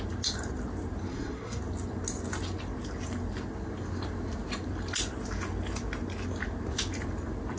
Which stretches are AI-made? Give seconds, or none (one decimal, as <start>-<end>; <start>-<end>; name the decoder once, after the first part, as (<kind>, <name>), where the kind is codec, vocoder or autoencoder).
1.1-1.6 (codec, SNAC)